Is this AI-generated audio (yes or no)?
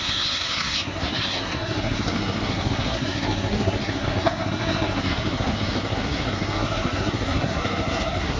yes